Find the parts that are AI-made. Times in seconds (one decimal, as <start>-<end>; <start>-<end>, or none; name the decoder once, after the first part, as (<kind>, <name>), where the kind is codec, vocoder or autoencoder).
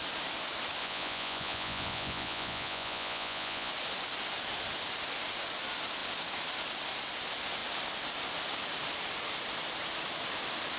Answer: 0.8-3.7 (vocoder, Vocos)